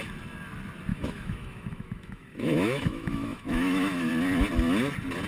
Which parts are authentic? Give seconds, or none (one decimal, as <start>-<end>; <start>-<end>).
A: 0.0-0.9; 4.1-5.3